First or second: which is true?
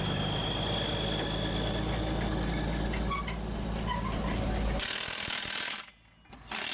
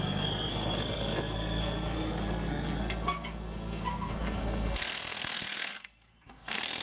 first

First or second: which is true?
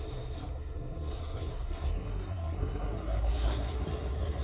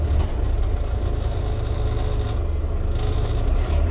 second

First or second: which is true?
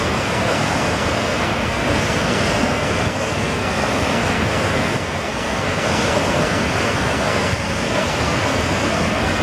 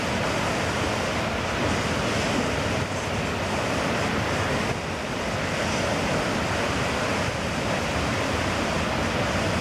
second